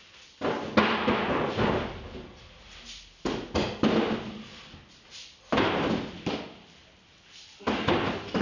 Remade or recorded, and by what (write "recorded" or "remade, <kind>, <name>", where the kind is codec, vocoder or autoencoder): recorded